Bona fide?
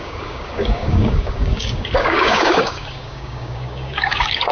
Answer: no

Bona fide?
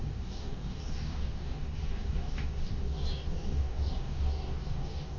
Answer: no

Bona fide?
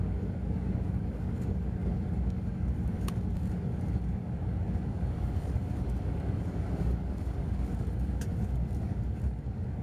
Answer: no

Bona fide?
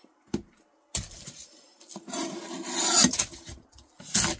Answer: yes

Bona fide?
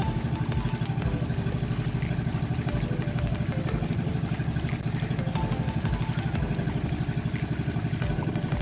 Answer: yes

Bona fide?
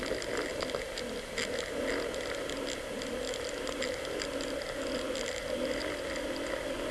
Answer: yes